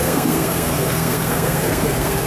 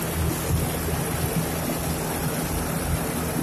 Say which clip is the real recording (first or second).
second